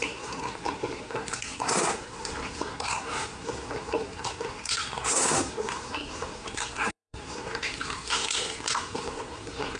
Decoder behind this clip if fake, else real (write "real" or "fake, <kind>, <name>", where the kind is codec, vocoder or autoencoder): fake, codec, SNAC